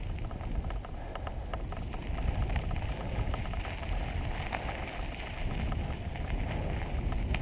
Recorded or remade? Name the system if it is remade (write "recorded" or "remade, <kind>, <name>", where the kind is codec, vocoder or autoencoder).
recorded